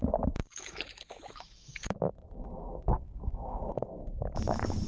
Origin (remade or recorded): remade